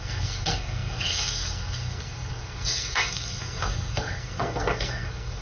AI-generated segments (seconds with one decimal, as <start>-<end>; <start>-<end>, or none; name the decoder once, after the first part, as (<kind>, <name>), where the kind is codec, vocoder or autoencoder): 0.0-5.4 (codec, SNAC)